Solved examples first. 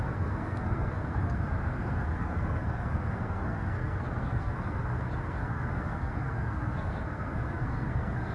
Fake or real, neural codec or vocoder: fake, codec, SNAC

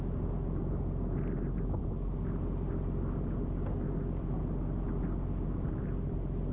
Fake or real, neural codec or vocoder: real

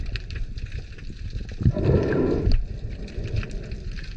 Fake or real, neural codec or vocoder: real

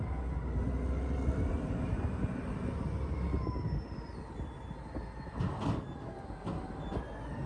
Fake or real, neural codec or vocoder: real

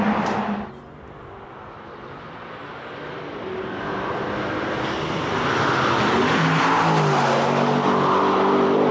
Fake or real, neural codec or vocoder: real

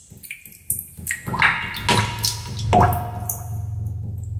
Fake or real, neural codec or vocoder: real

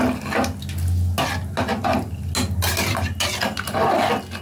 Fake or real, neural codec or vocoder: real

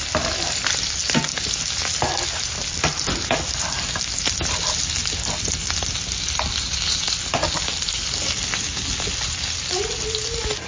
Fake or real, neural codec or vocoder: real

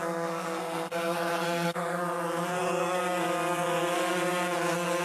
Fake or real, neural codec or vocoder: fake, codec, SNAC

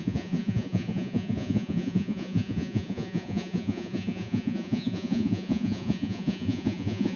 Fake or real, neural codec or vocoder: fake, vocoder, Vocos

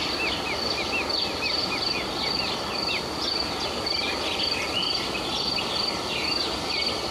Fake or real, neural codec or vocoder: real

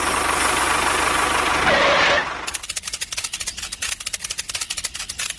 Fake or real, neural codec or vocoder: real